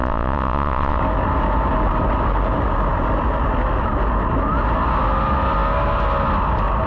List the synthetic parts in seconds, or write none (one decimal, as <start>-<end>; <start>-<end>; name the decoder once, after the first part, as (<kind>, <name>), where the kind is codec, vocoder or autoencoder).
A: 0.0-1.0 (vocoder, WaveNeXt)